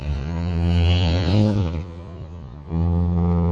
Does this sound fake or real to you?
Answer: fake